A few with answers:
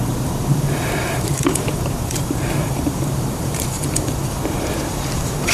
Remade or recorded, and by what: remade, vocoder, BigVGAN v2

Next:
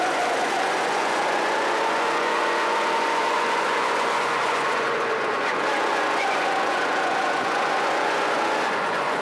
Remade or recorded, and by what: remade, vocoder, Vocos